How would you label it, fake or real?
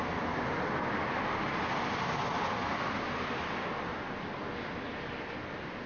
real